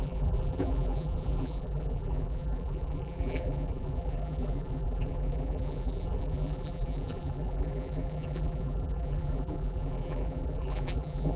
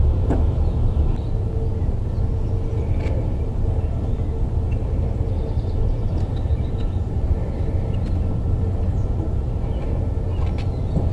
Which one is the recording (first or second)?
second